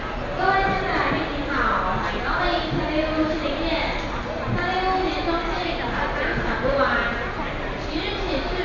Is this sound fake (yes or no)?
no